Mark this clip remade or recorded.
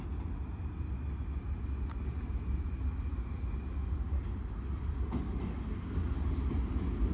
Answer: recorded